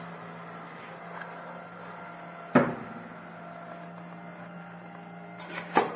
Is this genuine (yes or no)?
yes